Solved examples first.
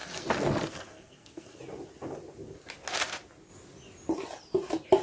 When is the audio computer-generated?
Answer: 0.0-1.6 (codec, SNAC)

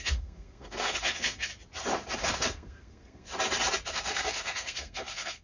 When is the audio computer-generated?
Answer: 0.0-1.5 (codec, SNAC); 2.2-3.3; 3.9-5.4